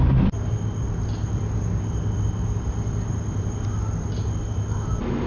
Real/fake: real